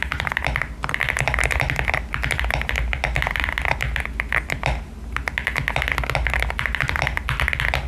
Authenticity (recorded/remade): recorded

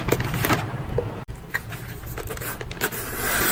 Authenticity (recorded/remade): recorded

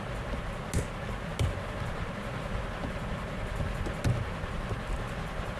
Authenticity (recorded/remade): recorded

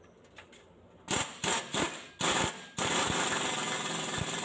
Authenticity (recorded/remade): recorded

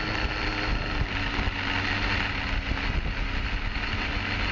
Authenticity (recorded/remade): recorded